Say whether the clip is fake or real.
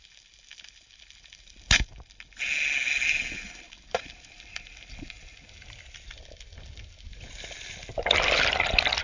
real